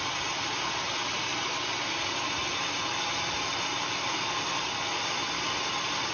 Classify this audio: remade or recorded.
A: recorded